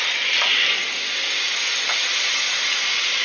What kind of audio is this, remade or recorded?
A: recorded